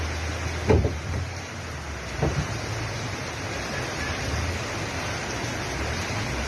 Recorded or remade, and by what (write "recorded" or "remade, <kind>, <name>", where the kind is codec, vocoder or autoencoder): recorded